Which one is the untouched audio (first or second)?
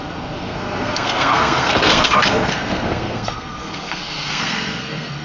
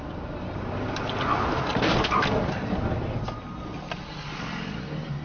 second